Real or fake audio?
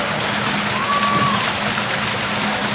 real